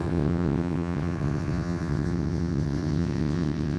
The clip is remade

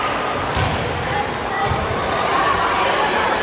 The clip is remade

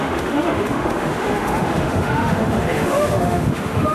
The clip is remade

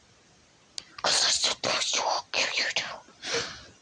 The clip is recorded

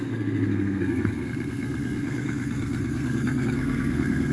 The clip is remade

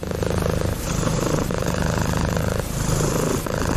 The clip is remade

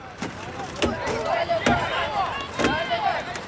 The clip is remade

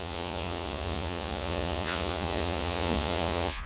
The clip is remade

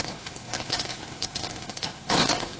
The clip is remade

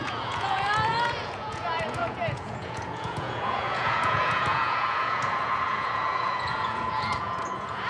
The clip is remade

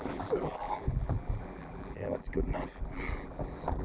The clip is remade